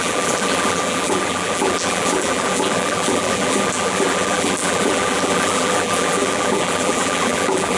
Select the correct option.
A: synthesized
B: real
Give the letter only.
A